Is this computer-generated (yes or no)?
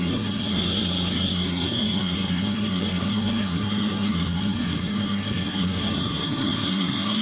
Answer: yes